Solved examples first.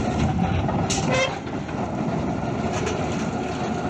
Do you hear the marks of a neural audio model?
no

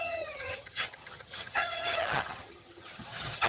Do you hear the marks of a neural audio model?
yes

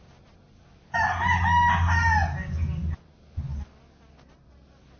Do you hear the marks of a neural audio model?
no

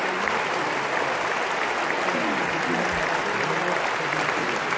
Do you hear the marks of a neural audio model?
no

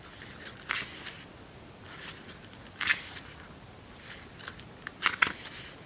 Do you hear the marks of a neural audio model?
no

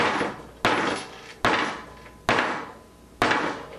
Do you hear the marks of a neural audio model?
no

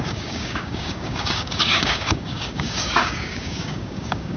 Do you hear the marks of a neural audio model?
yes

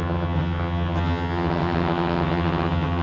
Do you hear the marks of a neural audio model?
yes